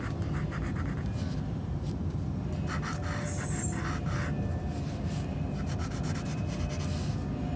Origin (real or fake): real